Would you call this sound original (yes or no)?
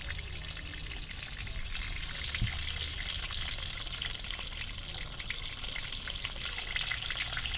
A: yes